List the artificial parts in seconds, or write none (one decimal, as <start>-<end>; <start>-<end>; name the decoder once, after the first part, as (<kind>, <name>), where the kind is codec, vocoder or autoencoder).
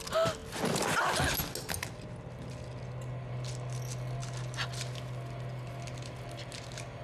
none